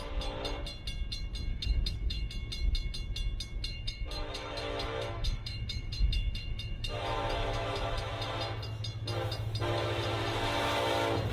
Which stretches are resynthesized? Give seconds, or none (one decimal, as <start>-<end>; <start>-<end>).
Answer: 1.5-2.3; 3.7-8.1